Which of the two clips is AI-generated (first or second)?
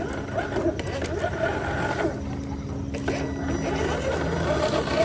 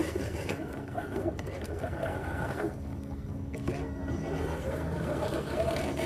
second